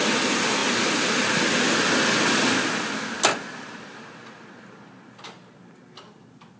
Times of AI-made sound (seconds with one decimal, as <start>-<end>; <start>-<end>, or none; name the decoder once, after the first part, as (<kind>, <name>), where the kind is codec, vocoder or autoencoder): none

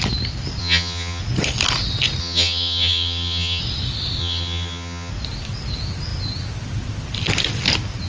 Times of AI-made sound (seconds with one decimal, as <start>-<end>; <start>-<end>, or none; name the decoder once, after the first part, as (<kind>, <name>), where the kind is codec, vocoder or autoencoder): 0.6-1.2 (vocoder, HiFi-GAN); 2.2-3.6; 4.2-5.1

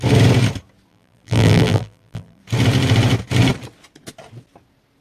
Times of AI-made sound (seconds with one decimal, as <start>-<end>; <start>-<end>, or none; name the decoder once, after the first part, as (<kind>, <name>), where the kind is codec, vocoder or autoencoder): 0.9-2.4 (vocoder, BigVGAN v2)

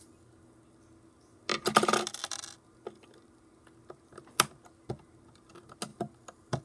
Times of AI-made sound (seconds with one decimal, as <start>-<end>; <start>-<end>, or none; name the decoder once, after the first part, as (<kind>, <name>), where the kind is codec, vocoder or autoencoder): none

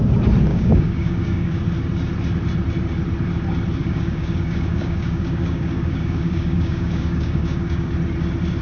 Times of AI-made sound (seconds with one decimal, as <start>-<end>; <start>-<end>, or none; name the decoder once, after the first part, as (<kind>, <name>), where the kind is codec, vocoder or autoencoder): 0.5-1.6 (codec, DAC); 3.8-7.9